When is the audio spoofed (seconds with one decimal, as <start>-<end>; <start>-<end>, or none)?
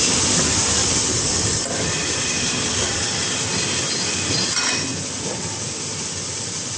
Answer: none